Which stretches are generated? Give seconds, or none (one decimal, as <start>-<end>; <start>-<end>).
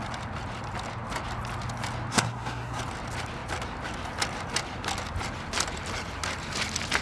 2.1-2.8